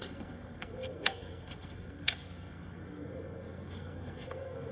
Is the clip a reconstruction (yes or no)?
yes